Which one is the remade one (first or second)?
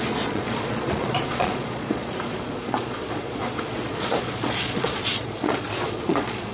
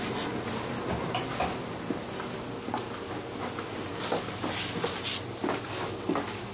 first